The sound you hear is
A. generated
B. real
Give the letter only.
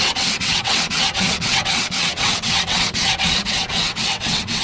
A